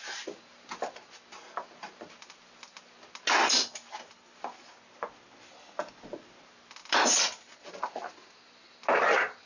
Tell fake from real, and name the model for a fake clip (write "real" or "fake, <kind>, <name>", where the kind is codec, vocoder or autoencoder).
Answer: real